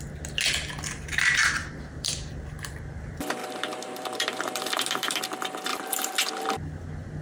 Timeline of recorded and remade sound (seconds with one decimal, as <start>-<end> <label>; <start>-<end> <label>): 0.0-1.6 recorded; 1.6-2.3 remade; 2.3-3.4 recorded; 3.4-5.2 remade; 5.2-5.7 recorded; 5.7-6.3 remade; 6.3-7.2 recorded

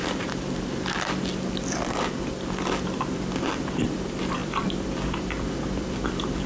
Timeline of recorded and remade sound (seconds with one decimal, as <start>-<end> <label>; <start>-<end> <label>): 0.0-3.0 recorded; 3.0-6.5 remade